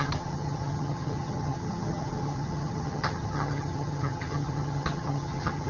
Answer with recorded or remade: remade